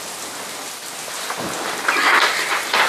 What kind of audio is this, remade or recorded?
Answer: recorded